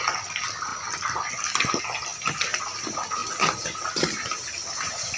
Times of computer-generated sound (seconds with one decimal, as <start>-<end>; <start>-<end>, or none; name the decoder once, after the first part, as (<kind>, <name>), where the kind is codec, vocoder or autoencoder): none